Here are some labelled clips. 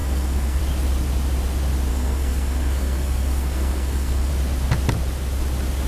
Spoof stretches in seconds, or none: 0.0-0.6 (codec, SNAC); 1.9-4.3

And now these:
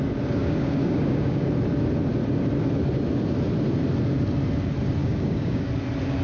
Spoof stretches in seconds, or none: 0.4-1.5 (codec, DAC); 5.0-5.7

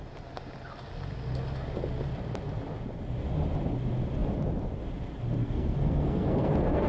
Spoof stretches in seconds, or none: 5.4-6.9 (codec, SNAC)